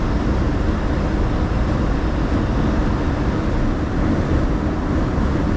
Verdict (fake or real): real